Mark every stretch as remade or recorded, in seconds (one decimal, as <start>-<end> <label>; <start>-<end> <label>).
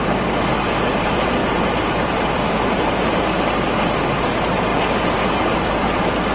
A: 0.0-6.3 recorded